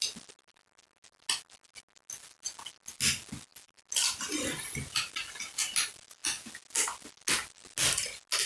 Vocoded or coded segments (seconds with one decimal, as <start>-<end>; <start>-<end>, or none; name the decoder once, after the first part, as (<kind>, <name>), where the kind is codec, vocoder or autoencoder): none